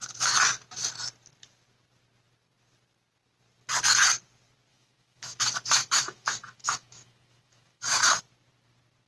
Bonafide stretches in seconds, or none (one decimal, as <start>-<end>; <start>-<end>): 0.0-4.7; 8.2-9.1